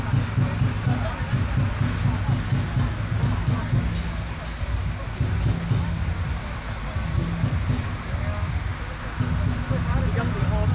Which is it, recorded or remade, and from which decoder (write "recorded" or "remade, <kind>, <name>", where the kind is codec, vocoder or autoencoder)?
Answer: recorded